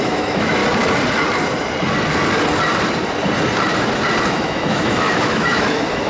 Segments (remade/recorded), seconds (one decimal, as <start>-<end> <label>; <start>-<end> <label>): 0.0-0.6 remade; 0.6-4.3 recorded; 4.3-6.1 remade